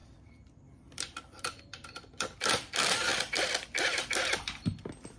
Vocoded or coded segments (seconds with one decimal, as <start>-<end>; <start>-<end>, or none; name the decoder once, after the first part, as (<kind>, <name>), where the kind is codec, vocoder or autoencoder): 0.0-5.2 (vocoder, BigVGAN v2)